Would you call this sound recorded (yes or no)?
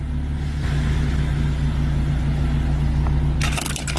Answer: yes